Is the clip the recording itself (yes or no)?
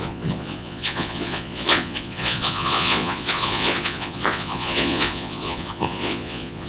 no